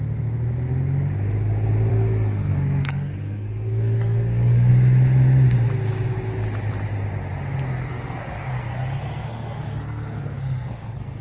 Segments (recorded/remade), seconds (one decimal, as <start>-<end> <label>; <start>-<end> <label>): 0.0-1.9 recorded; 1.9-4.7 remade; 4.7-7.8 recorded; 7.8-11.2 remade